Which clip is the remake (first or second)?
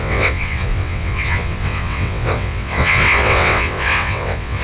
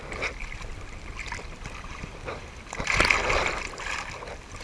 first